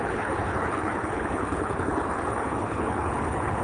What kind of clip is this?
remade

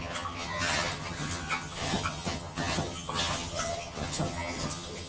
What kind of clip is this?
remade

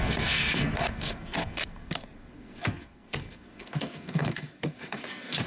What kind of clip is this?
remade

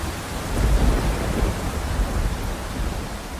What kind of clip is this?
recorded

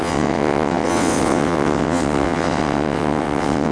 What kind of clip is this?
remade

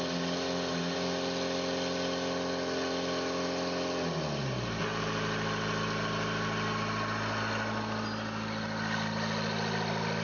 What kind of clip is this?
recorded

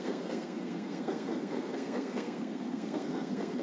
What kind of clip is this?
remade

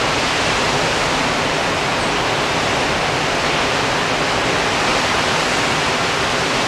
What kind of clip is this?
recorded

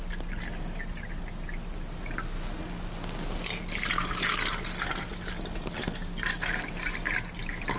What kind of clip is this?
recorded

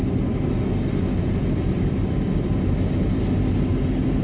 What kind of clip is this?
recorded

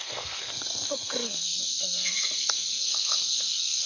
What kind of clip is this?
remade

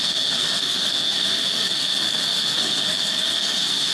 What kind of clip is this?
remade